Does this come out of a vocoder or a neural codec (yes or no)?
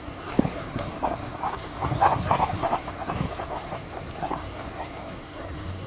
yes